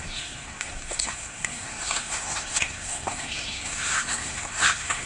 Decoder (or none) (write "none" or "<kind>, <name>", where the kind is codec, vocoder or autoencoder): codec, SNAC